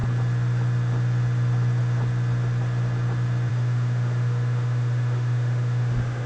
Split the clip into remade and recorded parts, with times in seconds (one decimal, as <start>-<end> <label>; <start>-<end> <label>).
0.0-3.5 recorded; 3.5-6.3 remade